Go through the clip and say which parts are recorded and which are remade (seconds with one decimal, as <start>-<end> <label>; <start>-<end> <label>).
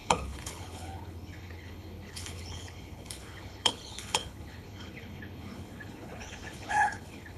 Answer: 0.0-7.4 remade